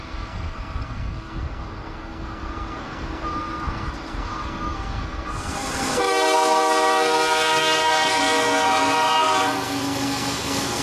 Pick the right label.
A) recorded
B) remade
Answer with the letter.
B